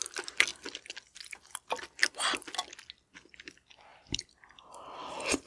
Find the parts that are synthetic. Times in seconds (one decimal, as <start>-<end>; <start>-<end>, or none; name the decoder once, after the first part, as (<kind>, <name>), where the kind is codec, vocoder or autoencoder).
3.9-5.5 (vocoder, BigVGAN v2)